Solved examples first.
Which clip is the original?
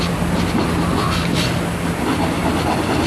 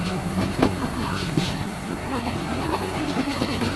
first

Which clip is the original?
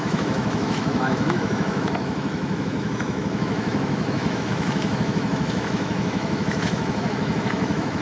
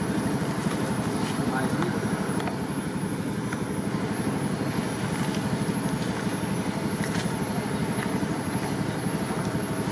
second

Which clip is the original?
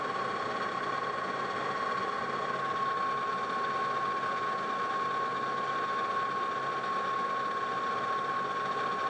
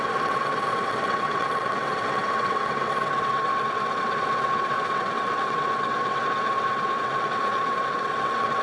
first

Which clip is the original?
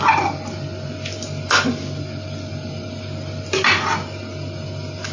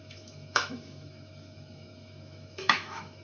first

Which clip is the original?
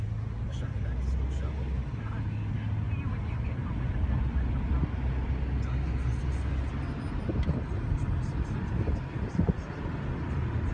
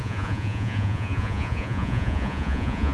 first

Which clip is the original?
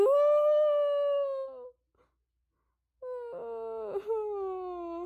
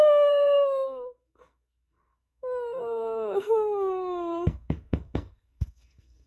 first